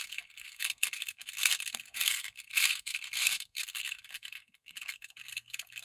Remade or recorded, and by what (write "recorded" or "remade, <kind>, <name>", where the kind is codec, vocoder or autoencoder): remade, codec, SNAC